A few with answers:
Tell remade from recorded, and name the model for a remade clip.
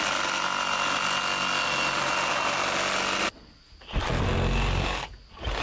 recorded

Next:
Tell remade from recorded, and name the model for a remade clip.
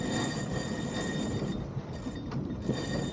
recorded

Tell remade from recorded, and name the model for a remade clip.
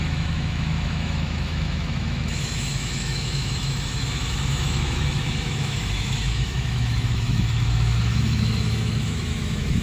remade, autoencoder, DAC-VAE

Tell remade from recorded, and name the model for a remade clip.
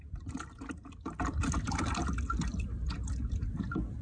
recorded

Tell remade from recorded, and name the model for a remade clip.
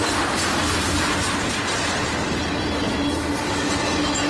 recorded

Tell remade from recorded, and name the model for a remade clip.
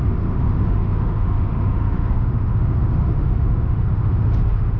remade, autoencoder, DAC-VAE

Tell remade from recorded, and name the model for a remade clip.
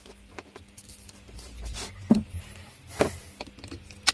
recorded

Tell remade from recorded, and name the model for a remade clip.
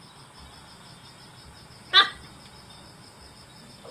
recorded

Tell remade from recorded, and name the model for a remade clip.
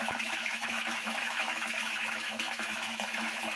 remade, autoencoder, DAC-VAE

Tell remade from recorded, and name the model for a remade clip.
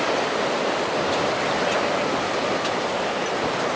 recorded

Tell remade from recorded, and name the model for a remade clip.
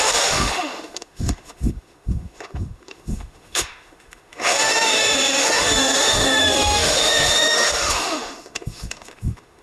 remade, autoencoder, DAC-VAE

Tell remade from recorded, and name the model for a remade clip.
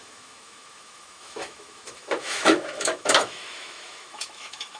remade, autoencoder, DAC-VAE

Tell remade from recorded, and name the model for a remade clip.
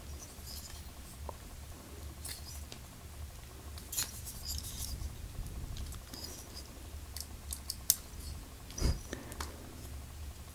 recorded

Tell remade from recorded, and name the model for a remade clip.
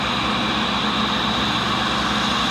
recorded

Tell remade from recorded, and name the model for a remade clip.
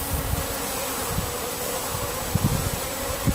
recorded